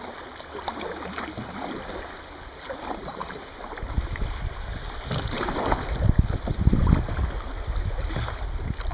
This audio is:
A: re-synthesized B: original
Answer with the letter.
B